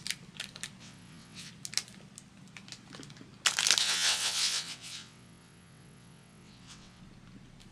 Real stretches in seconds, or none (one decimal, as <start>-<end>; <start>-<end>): 0.0-0.8; 1.5-3.8; 7.0-7.7